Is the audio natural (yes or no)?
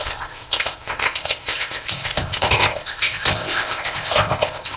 no